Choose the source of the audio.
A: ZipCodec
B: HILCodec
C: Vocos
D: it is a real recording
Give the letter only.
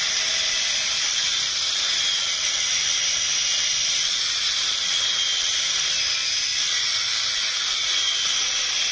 D